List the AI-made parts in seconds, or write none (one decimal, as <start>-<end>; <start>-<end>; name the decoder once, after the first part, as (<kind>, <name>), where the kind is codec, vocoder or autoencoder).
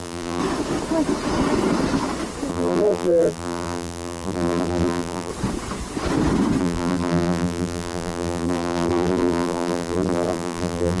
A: 0.0-0.4 (vocoder, BigVGAN v2); 2.5-5.3; 6.6-11.0